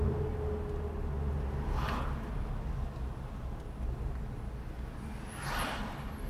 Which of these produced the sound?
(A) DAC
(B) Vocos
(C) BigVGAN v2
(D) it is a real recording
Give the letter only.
D